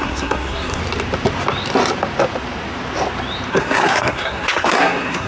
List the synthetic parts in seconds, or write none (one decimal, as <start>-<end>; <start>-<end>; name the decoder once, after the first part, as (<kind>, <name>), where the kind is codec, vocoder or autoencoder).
0.0-0.8 (codec, SNAC); 3.5-5.3